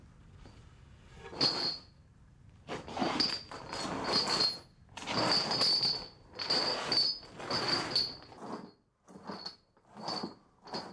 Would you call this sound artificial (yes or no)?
no